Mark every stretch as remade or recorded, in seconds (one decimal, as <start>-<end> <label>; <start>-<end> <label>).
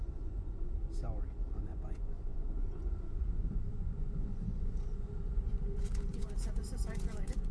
0.0-0.8 remade; 0.8-1.6 recorded; 1.6-7.5 remade